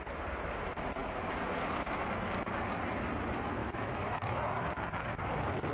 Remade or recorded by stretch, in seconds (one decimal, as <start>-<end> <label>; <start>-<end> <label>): 0.0-3.6 recorded; 3.6-4.4 remade; 4.4-5.7 recorded